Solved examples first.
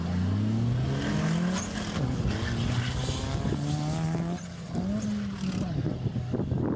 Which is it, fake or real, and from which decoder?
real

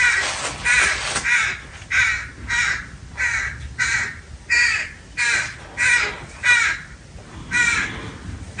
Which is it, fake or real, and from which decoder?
real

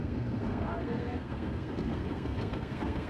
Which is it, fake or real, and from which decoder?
fake, codec, SNAC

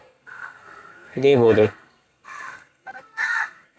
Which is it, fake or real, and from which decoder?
fake, codec, SNAC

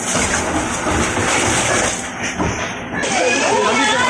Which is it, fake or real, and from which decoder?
real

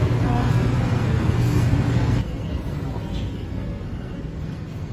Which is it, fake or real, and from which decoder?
fake, codec, SNAC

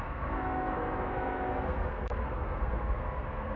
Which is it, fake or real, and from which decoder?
fake, codec, SNAC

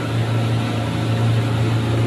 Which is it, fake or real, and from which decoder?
real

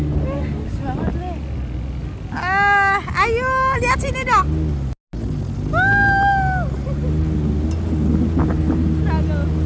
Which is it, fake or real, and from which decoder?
real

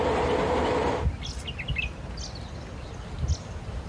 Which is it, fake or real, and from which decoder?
real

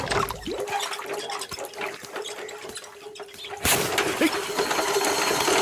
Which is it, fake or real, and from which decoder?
real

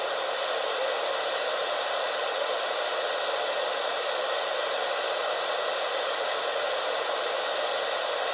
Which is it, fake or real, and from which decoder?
real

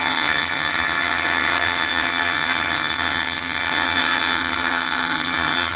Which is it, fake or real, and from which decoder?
fake, vocoder, HiFi-GAN